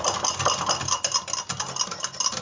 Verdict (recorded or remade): recorded